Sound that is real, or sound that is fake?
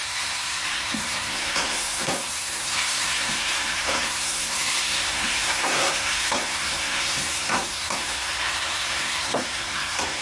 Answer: fake